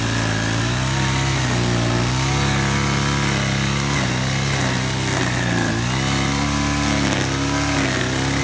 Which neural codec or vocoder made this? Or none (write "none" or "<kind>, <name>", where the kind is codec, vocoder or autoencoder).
none